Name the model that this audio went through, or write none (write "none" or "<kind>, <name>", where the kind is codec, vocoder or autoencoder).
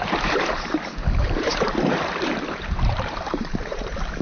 vocoder, BigVGAN v2